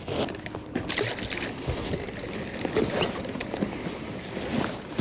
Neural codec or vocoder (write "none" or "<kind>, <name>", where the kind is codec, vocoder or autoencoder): none